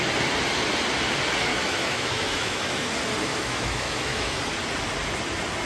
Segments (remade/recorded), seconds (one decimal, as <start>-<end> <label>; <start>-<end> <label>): 0.0-1.5 recorded; 1.5-2.9 remade; 2.9-3.3 recorded; 3.3-4.4 remade; 4.4-5.7 recorded